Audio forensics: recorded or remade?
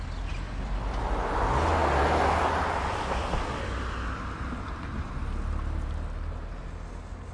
recorded